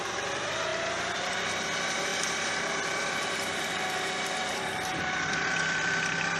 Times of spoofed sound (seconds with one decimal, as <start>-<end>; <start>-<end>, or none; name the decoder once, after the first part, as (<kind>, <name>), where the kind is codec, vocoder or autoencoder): 0.7-1.3 (vocoder, BigVGAN v2); 2.1-4.5; 4.9-6.4